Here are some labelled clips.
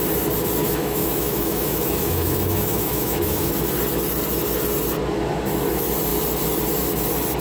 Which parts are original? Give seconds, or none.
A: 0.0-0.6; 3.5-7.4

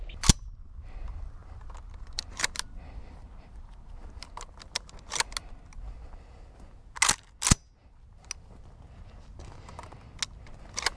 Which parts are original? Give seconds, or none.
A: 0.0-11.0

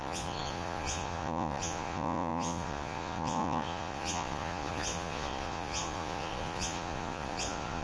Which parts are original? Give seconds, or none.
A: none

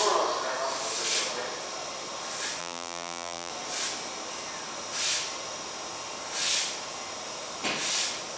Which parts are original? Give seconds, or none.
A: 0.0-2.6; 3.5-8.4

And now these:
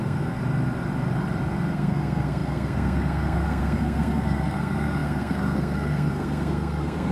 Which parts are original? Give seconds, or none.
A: 0.4-1.7

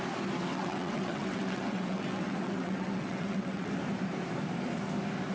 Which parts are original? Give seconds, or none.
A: 0.0-0.5; 3.7-5.3